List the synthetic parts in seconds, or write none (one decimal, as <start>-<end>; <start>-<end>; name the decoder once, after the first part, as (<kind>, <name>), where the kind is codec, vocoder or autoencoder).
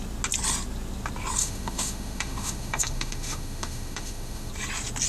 1.4-4.5 (autoencoder, DAC-VAE)